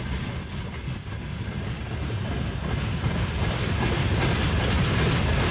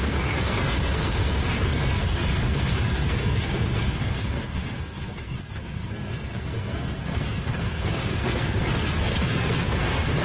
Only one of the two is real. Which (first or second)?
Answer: first